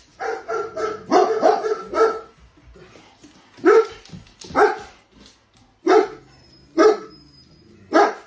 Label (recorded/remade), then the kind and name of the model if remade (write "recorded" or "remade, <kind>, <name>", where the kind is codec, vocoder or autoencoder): recorded